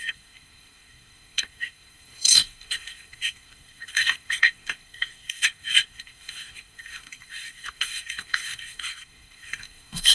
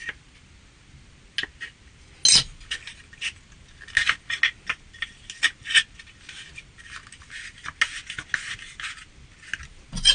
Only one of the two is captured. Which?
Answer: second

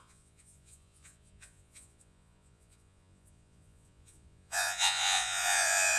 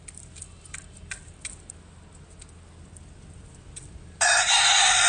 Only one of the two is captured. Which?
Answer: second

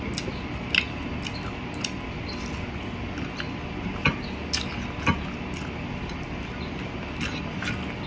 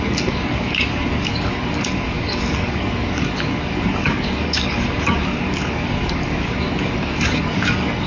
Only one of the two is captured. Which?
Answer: first